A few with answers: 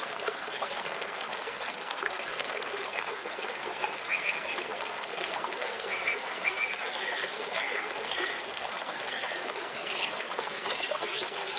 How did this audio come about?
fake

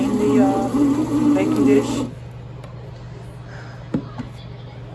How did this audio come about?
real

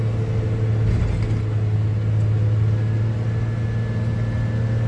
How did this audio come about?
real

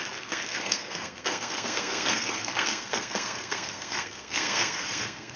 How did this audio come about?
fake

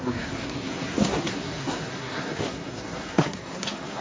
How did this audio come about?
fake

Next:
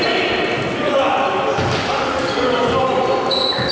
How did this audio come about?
real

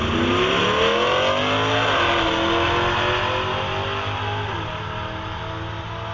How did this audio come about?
real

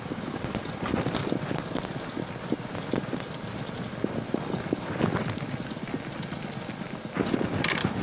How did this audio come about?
real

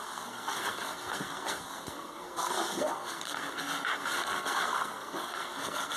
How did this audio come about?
fake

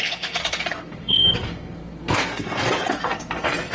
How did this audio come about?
fake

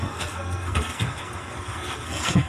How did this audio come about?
fake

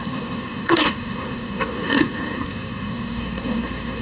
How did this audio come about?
fake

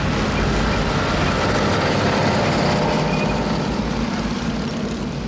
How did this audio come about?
real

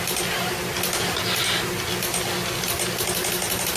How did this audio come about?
real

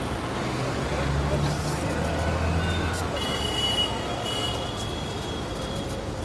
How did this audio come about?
real